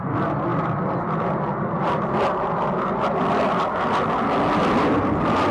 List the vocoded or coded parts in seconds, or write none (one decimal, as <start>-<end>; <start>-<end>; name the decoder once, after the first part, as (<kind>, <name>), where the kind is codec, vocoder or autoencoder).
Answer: none